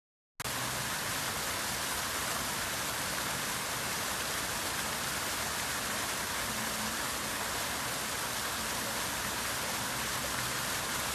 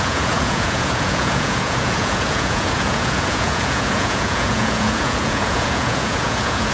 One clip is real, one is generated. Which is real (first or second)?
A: first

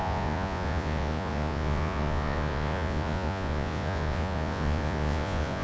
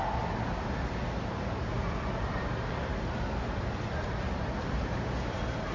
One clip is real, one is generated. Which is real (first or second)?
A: second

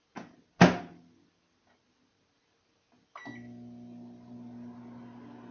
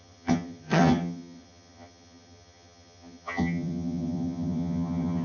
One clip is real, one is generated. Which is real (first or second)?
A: first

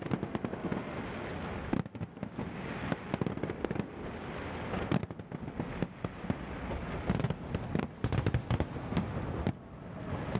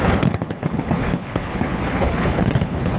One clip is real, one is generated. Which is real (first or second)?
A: first